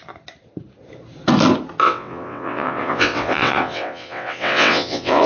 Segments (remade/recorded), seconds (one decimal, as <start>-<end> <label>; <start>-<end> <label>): 0.0-1.8 recorded; 1.8-5.3 remade